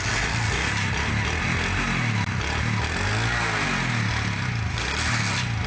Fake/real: real